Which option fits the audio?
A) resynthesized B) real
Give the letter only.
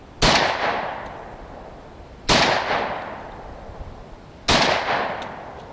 B